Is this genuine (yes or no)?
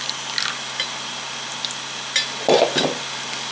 yes